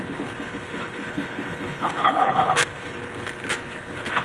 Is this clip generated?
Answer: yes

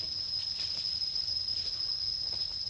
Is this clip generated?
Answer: no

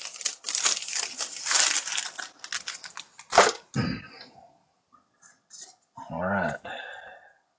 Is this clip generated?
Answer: no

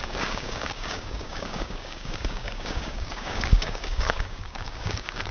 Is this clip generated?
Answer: yes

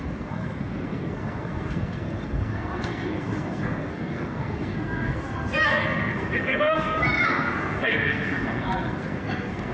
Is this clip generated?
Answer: yes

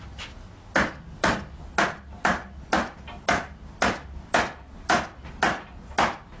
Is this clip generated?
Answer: no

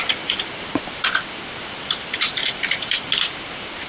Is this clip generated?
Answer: yes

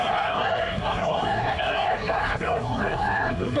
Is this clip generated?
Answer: yes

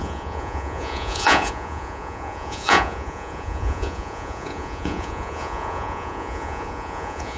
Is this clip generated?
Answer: yes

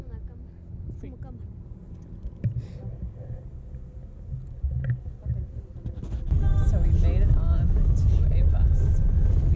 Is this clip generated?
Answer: no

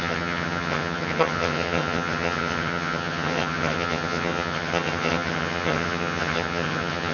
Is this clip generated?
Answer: yes